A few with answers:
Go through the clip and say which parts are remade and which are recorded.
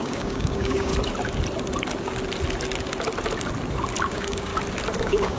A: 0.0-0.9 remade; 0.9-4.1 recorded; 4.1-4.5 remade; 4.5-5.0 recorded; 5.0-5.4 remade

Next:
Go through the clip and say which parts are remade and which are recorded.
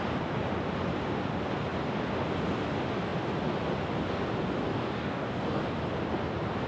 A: 0.0-4.7 recorded; 4.7-5.6 remade; 5.6-6.7 recorded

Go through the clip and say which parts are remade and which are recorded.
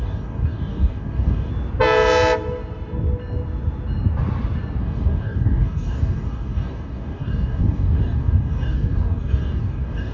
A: 0.0-1.5 remade; 1.5-4.8 recorded; 4.8-10.1 remade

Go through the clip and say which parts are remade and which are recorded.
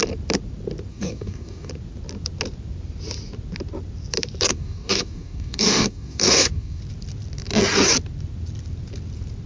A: 0.0-0.9 recorded; 0.9-1.7 remade; 1.7-4.5 recorded; 4.5-6.8 remade; 6.8-9.5 recorded